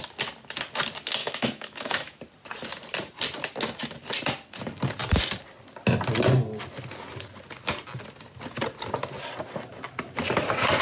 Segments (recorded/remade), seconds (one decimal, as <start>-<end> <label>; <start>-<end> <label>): 0.0-1.2 recorded; 1.2-2.2 remade; 2.2-10.8 recorded